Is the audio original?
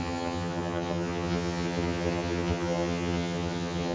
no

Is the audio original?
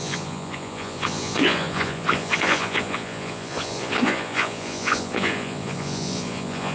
no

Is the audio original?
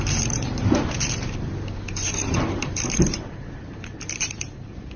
no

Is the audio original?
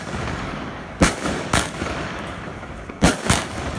no